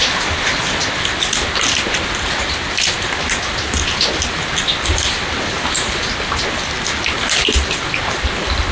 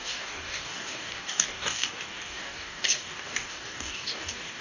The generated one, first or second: second